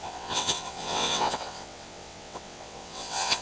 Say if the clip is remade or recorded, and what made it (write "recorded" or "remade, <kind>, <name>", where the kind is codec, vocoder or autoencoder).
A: remade, vocoder, WaveNeXt